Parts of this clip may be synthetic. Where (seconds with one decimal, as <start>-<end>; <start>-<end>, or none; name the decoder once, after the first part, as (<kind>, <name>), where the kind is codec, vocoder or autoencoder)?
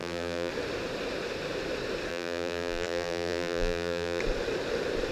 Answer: 0.0-0.5 (vocoder, BigVGAN v2); 2.1-4.2